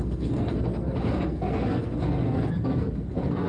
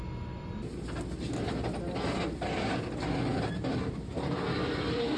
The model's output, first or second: first